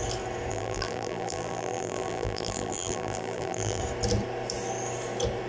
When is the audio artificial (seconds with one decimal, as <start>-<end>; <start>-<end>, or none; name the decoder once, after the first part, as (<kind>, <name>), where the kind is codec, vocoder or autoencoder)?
0.5-3.8 (vocoder, BigVGAN v2)